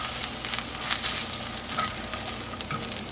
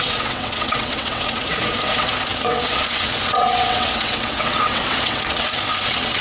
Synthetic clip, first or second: second